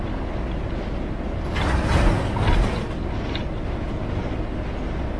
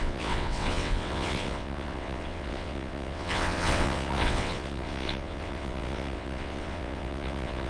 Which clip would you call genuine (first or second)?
first